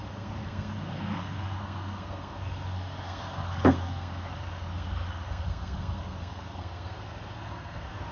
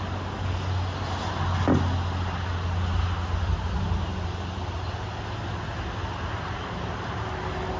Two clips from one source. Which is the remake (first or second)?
first